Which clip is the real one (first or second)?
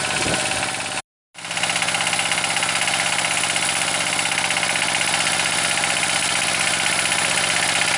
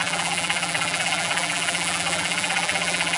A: first